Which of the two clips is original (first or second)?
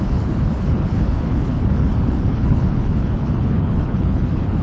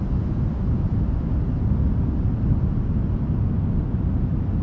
second